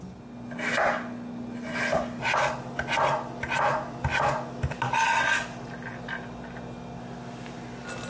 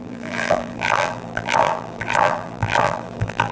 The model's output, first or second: second